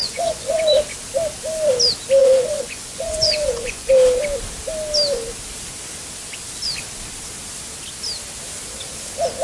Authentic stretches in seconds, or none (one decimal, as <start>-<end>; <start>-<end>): 0.6-2.2; 3.9-9.4